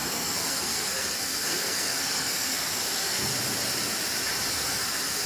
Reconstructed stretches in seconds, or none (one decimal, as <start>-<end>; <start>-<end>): 0.0-3.3; 4.5-5.3